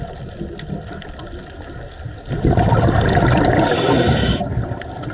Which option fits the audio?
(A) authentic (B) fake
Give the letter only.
A